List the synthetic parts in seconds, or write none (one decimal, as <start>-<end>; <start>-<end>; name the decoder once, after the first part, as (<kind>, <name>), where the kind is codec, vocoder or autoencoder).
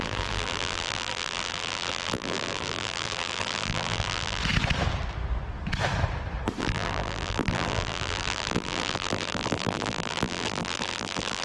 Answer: 0.0-4.4 (vocoder, BigVGAN v2); 6.6-11.4